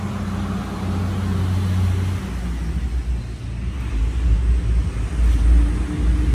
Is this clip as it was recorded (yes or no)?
yes